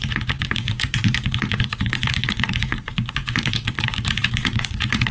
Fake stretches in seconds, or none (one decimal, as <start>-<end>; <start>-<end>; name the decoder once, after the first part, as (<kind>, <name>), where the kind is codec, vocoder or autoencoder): 0.0-5.1 (vocoder, Vocos)